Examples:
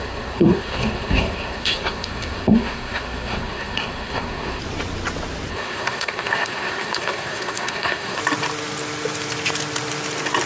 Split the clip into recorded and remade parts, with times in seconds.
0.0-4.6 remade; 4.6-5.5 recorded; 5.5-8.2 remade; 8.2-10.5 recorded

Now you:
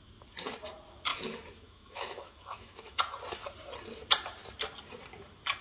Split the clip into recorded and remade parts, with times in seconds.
0.0-1.1 recorded; 1.1-3.0 remade; 3.0-5.6 recorded

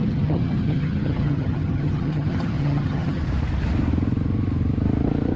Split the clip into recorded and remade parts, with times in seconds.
0.0-3.2 remade; 3.2-5.4 recorded